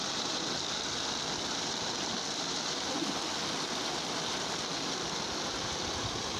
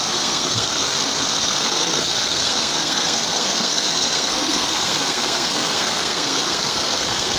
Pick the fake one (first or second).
second